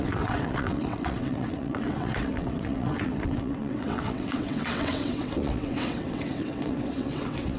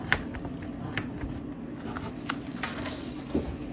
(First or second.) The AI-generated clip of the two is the first